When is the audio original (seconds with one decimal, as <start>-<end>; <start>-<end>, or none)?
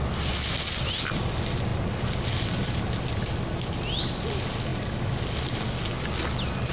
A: 0.0-6.7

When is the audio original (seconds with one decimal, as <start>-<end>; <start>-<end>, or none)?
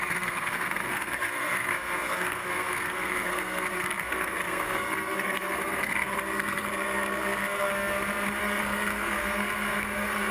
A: 7.7-8.4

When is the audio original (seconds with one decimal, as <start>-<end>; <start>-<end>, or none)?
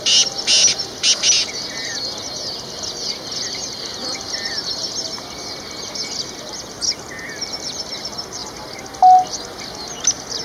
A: 0.0-10.4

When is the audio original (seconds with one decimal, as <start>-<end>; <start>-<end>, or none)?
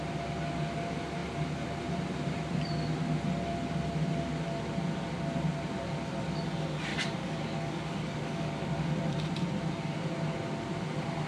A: 0.0-6.9; 9.0-11.3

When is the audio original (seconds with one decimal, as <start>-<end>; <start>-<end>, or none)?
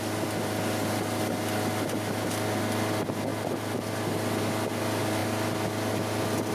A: 0.0-6.5